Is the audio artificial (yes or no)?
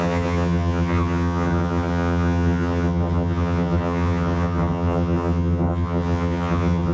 yes